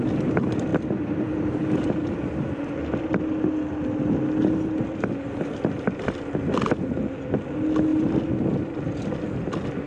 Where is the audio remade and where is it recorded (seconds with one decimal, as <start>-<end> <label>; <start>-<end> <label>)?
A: 0.0-0.7 recorded; 0.7-3.2 remade; 3.2-9.9 recorded